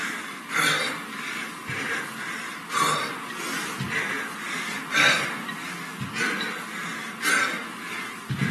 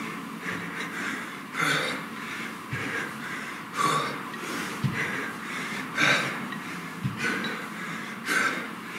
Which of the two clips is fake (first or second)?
second